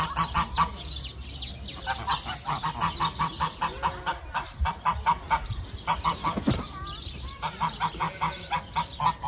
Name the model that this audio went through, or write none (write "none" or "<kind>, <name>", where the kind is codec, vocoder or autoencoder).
none